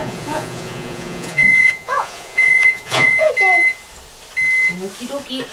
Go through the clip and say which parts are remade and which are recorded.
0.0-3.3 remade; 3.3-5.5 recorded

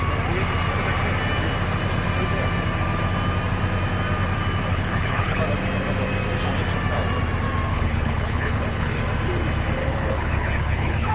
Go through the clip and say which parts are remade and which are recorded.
0.0-4.7 recorded; 4.7-5.4 remade; 5.4-7.7 recorded; 7.7-9.0 remade; 9.0-9.8 recorded; 9.8-11.1 remade

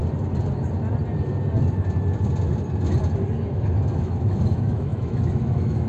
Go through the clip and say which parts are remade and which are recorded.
0.0-3.5 recorded; 3.5-5.9 remade

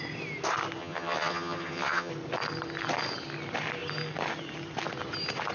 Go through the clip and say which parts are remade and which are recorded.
0.0-0.8 recorded; 0.8-2.1 remade; 2.1-5.5 recorded

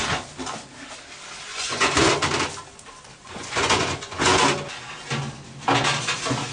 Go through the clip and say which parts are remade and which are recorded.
0.0-1.5 recorded; 1.5-2.1 remade; 2.1-3.2 recorded; 3.2-4.4 remade; 4.4-6.5 recorded

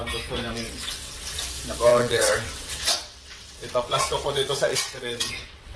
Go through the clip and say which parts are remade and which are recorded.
0.0-0.5 recorded; 0.5-1.4 remade; 1.4-1.9 recorded; 1.9-5.8 remade

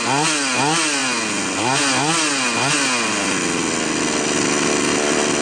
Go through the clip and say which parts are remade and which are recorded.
0.0-5.4 recorded